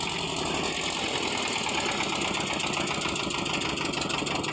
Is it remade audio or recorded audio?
recorded